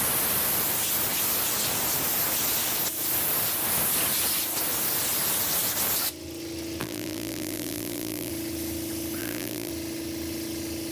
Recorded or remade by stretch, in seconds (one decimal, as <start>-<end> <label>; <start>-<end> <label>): 0.0-6.8 recorded; 6.8-8.3 remade; 8.3-9.2 recorded; 9.2-9.7 remade; 9.7-10.9 recorded